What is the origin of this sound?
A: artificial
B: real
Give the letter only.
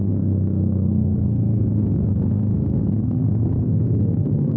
A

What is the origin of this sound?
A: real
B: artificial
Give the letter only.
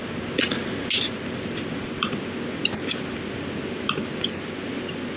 A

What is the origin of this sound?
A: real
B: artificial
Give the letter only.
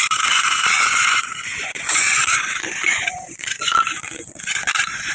B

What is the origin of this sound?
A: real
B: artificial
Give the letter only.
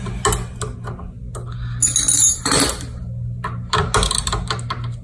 A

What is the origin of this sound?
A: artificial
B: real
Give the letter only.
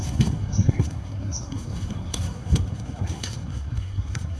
A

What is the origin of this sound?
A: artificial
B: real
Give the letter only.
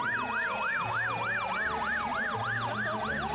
B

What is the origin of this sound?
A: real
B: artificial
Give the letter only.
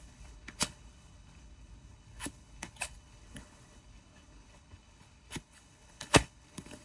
B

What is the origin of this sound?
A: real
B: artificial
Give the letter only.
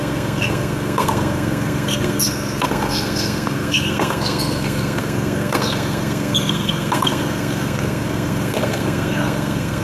B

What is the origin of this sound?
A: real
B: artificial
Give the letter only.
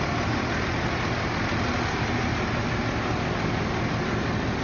A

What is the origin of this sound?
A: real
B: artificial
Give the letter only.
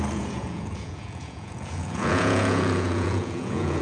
B